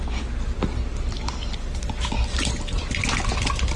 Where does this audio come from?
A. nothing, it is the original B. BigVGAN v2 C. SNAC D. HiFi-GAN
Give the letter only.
A